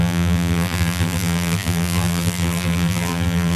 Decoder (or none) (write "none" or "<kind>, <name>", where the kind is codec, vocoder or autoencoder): vocoder, BigVGAN v2